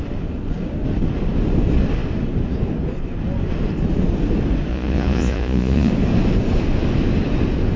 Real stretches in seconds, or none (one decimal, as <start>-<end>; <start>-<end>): 0.0-4.7; 5.9-7.8